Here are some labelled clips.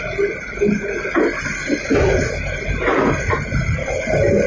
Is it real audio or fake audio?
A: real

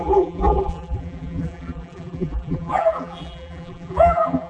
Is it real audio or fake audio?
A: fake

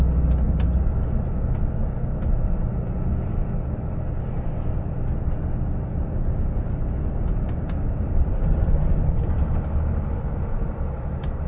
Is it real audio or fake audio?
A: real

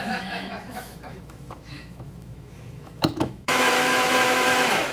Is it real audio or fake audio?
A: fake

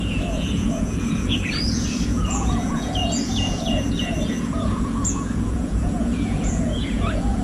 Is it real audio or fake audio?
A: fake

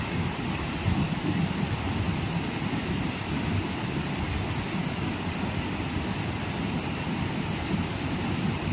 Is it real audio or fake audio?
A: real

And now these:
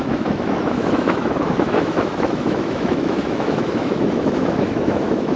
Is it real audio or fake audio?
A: fake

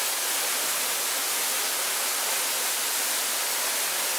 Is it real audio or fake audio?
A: real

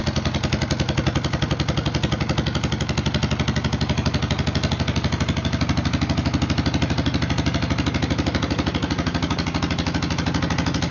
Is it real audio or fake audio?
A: real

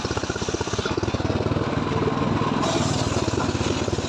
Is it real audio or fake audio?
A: real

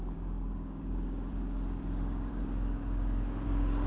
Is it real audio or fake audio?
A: fake